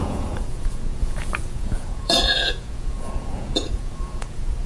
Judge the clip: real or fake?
fake